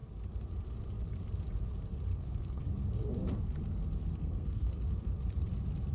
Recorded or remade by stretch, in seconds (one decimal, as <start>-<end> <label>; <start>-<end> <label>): 0.0-2.1 recorded; 2.1-2.6 remade; 2.6-4.2 recorded; 4.2-4.8 remade; 4.8-5.9 recorded